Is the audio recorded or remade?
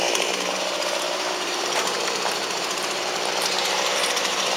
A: remade